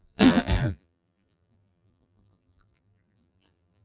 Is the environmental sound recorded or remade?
remade